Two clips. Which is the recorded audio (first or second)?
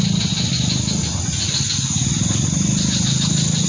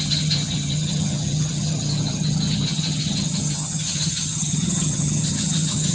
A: first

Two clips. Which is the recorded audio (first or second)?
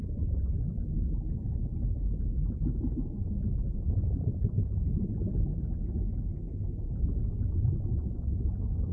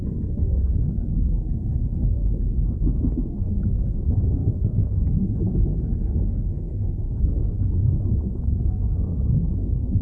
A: first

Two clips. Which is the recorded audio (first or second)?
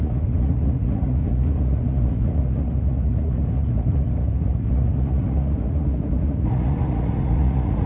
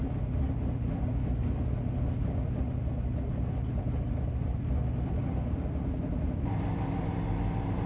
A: second